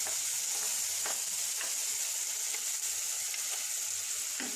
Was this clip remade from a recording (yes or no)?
no